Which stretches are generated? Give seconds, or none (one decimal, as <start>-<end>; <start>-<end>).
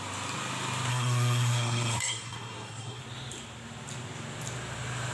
0.9-3.0